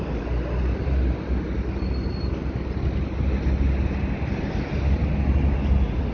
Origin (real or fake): real